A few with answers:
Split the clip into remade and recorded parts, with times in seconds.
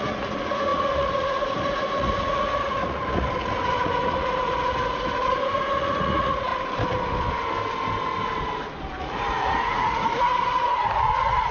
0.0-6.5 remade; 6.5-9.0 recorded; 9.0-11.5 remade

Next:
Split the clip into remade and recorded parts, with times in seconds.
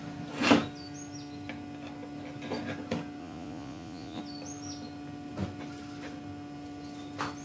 0.0-3.2 recorded; 3.2-4.2 remade; 4.2-7.4 recorded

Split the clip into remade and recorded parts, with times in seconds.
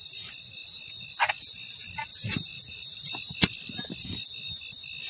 0.0-2.1 recorded; 2.1-3.4 remade; 3.4-5.1 recorded